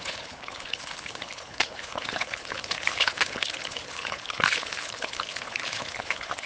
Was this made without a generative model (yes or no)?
no